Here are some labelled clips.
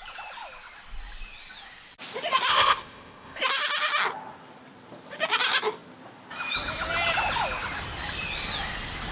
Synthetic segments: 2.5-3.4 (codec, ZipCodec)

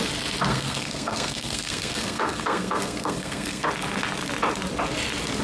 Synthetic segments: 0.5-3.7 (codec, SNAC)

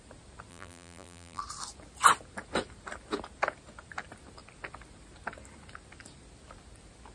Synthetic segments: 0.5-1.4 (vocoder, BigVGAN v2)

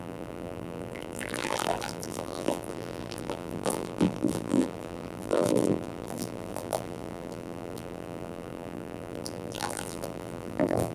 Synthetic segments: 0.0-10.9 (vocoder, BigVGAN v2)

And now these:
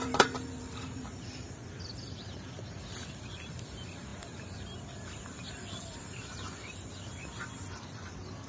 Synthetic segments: 0.0-8.5 (vocoder, BigVGAN v2)

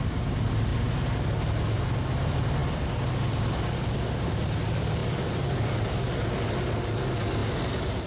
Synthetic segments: none

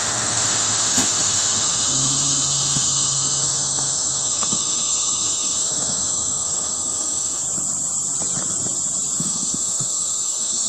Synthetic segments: 0.0-7.4 (autoencoder, DAC-VAE); 9.2-10.7

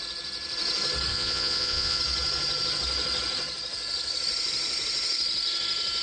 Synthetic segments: 1.1-2.0 (vocoder, Vocos)